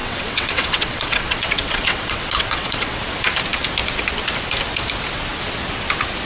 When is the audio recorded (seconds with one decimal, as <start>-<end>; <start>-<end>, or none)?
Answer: 3.0-6.3